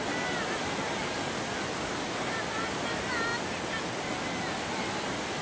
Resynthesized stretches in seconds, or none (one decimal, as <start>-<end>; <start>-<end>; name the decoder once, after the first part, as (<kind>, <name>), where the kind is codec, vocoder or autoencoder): none